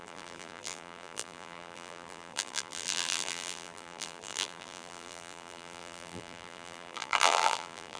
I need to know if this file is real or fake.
fake